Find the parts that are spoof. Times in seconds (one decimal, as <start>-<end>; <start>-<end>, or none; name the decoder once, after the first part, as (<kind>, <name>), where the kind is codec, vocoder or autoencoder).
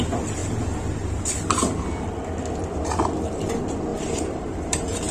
3.9-5.1 (vocoder, BigVGAN v2)